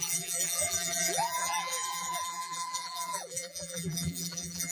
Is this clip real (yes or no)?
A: no